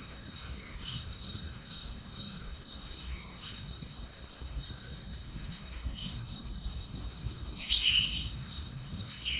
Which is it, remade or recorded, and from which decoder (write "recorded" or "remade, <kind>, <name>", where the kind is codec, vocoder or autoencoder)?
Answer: remade, codec, SNAC